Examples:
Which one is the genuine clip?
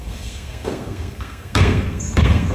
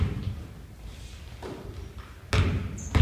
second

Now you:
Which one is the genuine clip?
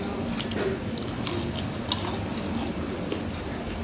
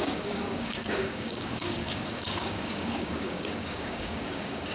first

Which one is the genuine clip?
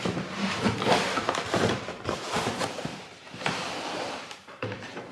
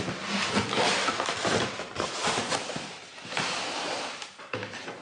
second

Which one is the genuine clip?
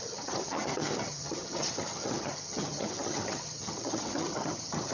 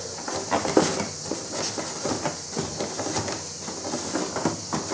second